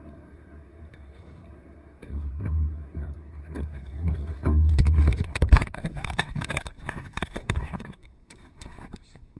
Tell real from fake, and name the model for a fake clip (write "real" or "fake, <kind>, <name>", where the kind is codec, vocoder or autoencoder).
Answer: fake, codec, SNAC